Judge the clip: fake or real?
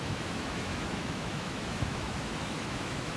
fake